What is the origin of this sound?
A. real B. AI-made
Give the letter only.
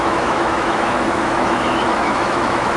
B